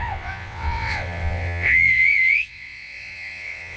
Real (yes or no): no